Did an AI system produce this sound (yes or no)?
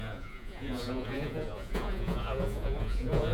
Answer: yes